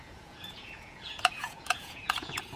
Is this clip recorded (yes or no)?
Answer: no